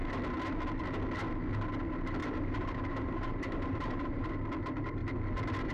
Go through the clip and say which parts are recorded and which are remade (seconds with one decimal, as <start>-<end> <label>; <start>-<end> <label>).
0.0-2.2 recorded; 2.2-4.3 remade; 4.3-5.7 recorded